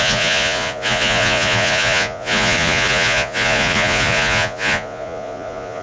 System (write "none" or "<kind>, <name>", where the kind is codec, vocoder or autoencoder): vocoder, Vocos